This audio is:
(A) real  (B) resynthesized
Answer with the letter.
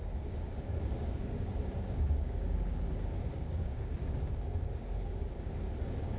B